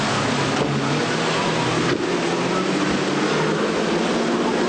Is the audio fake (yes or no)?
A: no